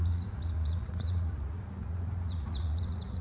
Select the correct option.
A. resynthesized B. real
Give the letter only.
A